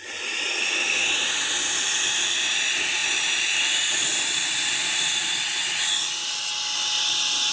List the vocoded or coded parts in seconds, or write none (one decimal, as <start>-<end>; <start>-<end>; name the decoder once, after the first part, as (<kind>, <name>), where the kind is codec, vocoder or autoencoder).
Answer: none